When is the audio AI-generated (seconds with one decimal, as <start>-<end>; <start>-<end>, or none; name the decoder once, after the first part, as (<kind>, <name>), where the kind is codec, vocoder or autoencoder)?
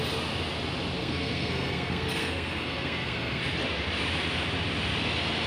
1.0-3.4 (codec, SNAC)